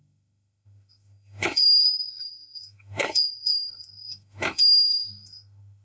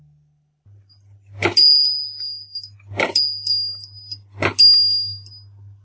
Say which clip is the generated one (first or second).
first